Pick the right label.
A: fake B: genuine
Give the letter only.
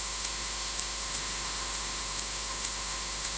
A